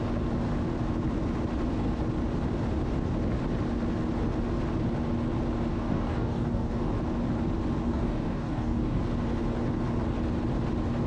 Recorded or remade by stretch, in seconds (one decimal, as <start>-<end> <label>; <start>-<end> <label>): 0.0-5.7 recorded; 5.7-6.9 remade; 6.9-7.8 recorded; 7.8-9.0 remade; 9.0-11.1 recorded